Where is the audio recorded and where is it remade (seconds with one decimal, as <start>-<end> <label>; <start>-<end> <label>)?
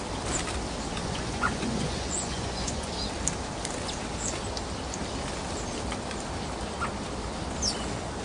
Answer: 0.0-1.0 recorded; 1.0-2.9 remade; 2.9-8.2 recorded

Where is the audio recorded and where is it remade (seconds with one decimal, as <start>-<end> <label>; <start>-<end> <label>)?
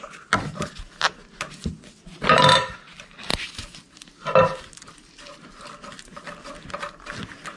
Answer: 0.0-7.6 recorded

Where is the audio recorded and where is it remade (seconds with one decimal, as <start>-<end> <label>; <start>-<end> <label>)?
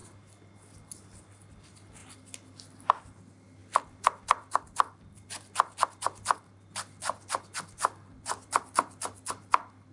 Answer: 0.0-9.9 recorded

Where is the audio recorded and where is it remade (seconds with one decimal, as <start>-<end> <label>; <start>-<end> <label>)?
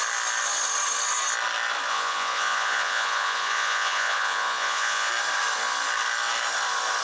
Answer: 0.0-1.9 recorded; 1.9-5.1 remade; 5.1-7.0 recorded